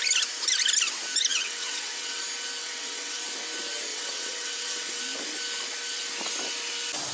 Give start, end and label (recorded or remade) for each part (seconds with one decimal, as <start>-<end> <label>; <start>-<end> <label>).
0.0-1.3 recorded; 1.3-2.2 remade; 2.2-2.6 recorded; 2.6-3.2 remade; 3.2-3.9 recorded; 3.9-5.0 remade; 5.0-7.1 recorded